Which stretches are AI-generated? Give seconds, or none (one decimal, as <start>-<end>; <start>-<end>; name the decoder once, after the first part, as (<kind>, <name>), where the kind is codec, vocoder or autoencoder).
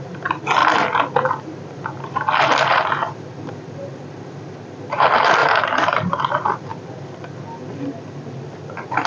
5.4-6.2 (vocoder, BigVGAN v2)